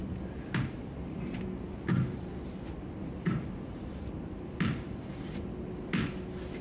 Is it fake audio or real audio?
real